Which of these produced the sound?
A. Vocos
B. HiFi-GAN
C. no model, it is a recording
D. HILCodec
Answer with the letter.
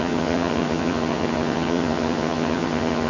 B